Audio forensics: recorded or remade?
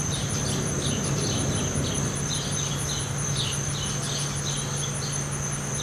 recorded